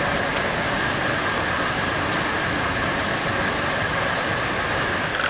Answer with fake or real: real